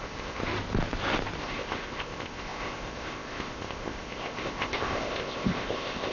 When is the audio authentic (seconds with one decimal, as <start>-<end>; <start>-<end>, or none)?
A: 0.4-1.4